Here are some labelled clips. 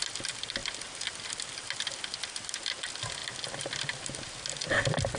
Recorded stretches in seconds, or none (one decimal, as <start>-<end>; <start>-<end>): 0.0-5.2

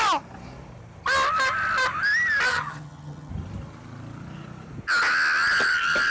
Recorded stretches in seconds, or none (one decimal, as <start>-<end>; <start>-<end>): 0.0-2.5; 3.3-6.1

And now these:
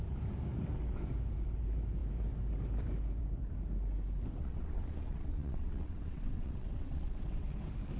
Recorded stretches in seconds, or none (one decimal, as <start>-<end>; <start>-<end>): 0.0-4.4; 7.6-8.0